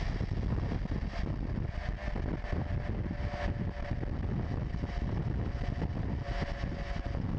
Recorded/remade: recorded